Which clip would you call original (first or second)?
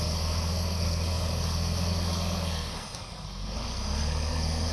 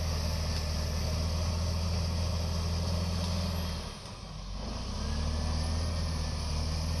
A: second